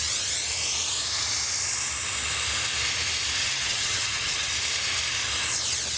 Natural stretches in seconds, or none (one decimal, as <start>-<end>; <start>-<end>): 0.0-3.4; 4.5-6.0